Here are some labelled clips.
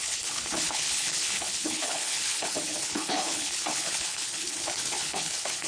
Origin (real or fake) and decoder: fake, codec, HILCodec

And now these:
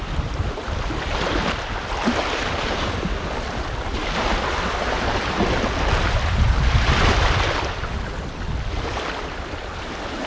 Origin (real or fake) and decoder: real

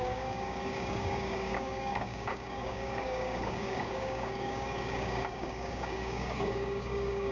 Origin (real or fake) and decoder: fake, codec, DAC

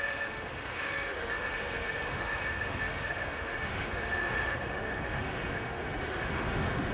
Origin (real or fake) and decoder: fake, autoencoder, DAC-VAE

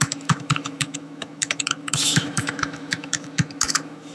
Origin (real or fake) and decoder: fake, autoencoder, DAC-VAE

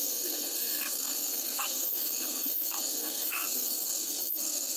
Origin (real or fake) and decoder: fake, codec, SNAC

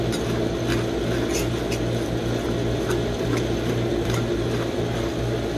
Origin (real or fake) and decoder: real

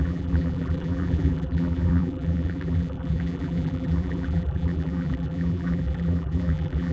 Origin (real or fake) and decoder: fake, vocoder, BigVGAN v2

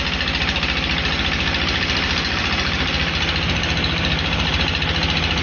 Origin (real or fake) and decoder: real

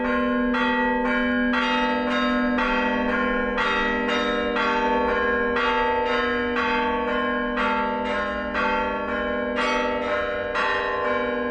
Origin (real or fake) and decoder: real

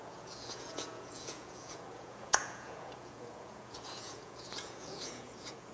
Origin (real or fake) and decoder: fake, vocoder, Vocos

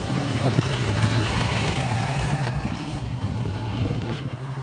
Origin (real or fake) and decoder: fake, codec, SNAC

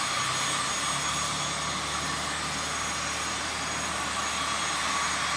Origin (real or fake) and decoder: real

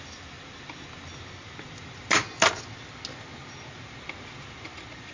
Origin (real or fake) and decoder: real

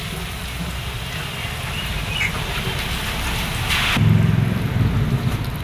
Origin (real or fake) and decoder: real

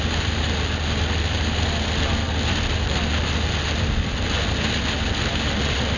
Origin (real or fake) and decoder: real